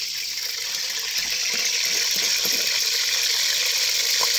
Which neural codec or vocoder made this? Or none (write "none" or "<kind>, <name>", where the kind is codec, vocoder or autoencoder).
none